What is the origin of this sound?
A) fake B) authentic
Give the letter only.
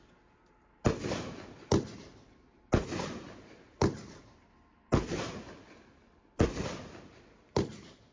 B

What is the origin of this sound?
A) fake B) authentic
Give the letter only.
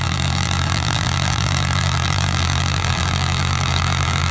A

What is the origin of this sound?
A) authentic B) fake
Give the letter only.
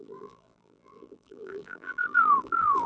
B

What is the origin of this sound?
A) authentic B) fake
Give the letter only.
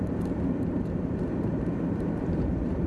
B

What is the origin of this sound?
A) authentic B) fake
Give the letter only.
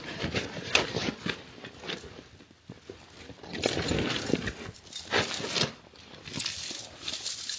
B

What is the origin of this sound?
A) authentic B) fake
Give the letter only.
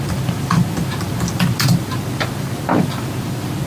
A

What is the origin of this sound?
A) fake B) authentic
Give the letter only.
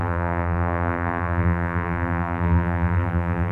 A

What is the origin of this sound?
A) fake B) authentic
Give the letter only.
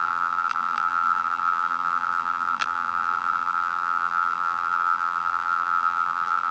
A